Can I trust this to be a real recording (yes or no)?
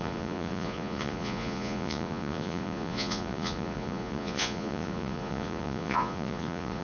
no